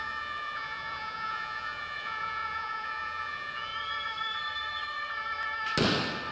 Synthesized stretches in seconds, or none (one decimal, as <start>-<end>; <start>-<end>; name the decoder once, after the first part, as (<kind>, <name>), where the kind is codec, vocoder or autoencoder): 0.0-3.7 (vocoder, Vocos)